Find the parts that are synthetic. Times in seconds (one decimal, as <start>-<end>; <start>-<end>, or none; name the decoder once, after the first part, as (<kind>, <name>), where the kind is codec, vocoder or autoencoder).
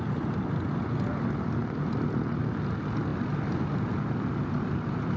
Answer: none